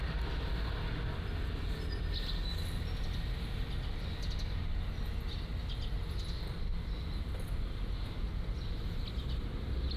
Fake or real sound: real